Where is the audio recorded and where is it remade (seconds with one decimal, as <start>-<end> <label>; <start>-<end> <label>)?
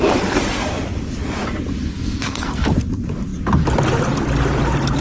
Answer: 0.0-1.8 recorded; 1.8-2.9 remade; 2.9-5.0 recorded